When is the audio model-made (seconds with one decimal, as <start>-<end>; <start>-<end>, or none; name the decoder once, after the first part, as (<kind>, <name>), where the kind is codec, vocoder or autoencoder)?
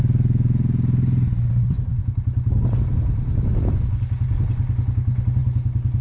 none